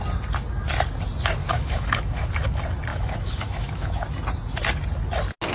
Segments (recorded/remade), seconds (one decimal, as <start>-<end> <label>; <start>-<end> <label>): 0.0-1.4 recorded; 1.4-2.3 remade; 2.3-2.9 recorded; 2.9-4.0 remade; 4.0-5.5 recorded